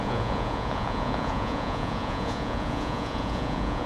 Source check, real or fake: fake